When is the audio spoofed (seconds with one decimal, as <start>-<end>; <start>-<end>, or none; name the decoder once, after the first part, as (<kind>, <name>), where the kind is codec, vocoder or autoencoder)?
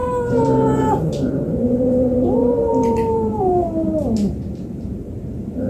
0.0-5.7 (vocoder, BigVGAN v2)